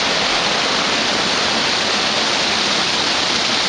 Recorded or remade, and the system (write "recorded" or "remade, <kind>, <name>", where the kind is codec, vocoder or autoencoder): recorded